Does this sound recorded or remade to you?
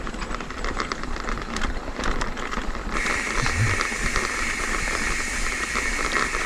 remade